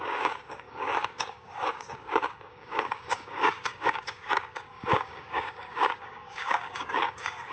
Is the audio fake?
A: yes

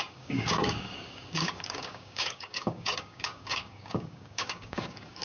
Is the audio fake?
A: yes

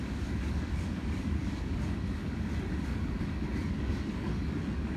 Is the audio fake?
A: yes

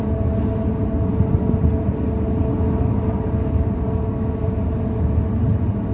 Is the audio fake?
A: no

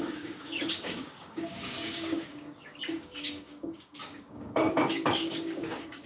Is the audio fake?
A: yes